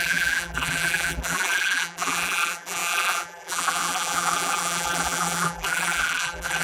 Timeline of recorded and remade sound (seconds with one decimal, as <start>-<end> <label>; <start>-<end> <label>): 0.0-6.6 remade